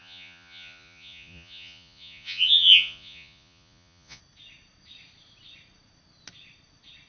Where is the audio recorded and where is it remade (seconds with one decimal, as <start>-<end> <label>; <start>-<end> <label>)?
0.0-4.2 remade; 4.2-7.1 recorded